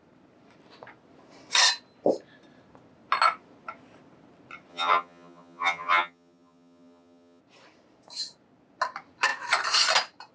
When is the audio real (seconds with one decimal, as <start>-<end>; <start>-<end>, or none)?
0.0-4.7; 7.4-10.3